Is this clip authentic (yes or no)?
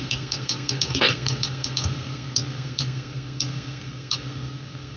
no